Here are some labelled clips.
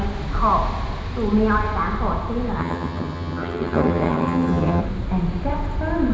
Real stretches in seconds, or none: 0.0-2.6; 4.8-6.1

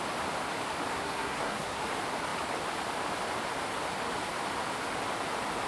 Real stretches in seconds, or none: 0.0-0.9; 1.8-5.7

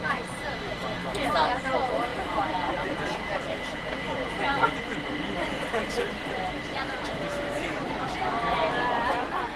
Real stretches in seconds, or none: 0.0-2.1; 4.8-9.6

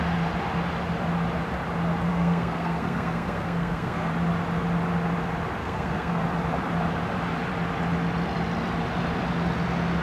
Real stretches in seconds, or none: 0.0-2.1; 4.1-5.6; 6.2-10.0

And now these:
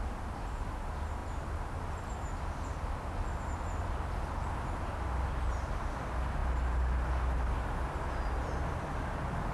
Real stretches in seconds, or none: 0.0-9.5